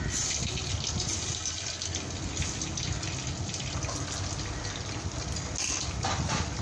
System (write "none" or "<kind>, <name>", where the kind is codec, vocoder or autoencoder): none